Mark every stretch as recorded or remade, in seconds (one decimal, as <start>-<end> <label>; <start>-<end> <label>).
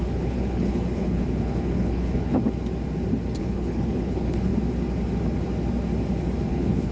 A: 0.0-2.4 remade; 2.4-3.4 recorded; 3.4-4.5 remade; 4.5-6.5 recorded; 6.5-6.9 remade